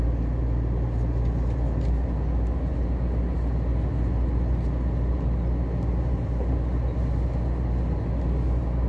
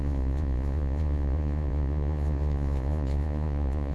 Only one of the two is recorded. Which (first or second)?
first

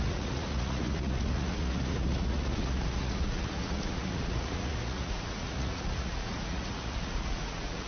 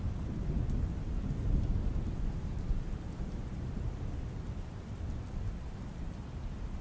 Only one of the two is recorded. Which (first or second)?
second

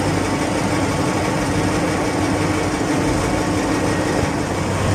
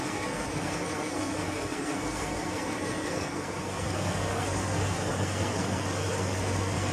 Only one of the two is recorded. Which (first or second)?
first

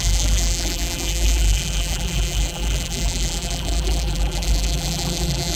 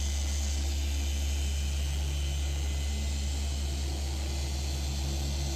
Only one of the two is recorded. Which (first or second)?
second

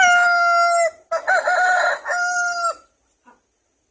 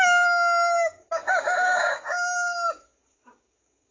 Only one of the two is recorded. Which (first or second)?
first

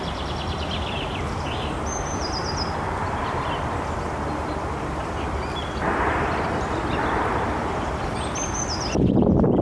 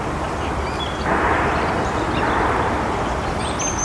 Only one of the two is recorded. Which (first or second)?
second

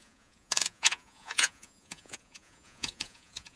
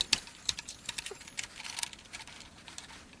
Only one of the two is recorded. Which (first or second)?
second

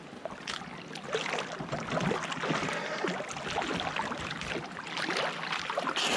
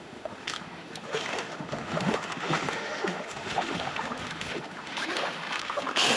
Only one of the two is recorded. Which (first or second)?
first